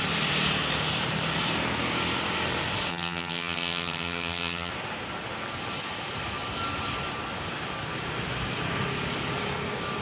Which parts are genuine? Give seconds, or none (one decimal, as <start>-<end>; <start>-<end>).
0.0-2.9; 4.7-10.0